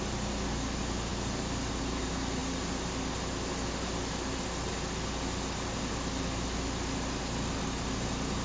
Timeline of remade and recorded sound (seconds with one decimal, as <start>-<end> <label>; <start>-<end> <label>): 0.0-8.4 recorded